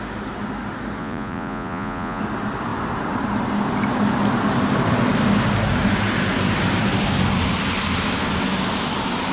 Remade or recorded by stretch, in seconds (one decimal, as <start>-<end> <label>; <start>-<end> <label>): 0.0-1.0 recorded; 1.0-2.2 remade; 2.2-9.3 recorded

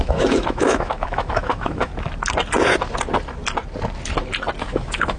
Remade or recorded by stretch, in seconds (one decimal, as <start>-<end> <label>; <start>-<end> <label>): 0.0-1.9 remade; 1.9-4.6 recorded; 4.6-5.2 remade

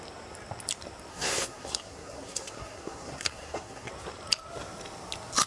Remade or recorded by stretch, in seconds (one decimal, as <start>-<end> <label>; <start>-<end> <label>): 0.0-1.1 recorded; 1.1-3.9 remade; 3.9-5.5 recorded

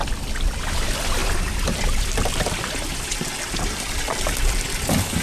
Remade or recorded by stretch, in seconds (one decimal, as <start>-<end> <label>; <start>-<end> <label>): 0.0-1.2 recorded; 1.2-4.3 remade; 4.3-5.2 recorded

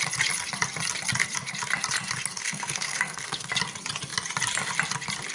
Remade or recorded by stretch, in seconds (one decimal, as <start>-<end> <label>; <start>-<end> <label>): 0.0-2.4 recorded; 2.4-3.5 remade; 3.5-5.3 recorded

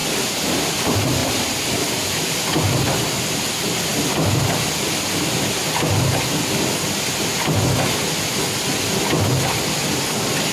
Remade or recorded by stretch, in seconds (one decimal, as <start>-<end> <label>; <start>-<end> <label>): 0.0-0.6 remade; 0.6-1.2 recorded; 1.2-3.2 remade; 3.2-10.5 recorded

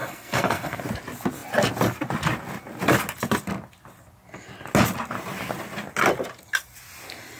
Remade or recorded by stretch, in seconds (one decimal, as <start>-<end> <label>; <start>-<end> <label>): 0.0-0.8 remade; 0.8-7.4 recorded